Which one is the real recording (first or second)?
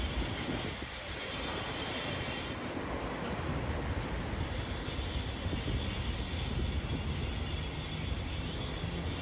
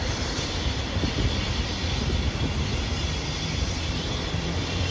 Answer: first